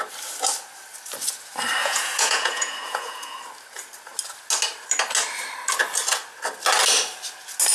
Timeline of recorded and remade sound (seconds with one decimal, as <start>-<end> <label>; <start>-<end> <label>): 0.0-1.8 recorded; 1.8-3.4 remade; 3.4-7.7 recorded